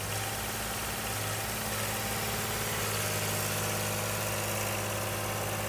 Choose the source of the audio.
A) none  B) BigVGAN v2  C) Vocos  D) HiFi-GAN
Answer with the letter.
A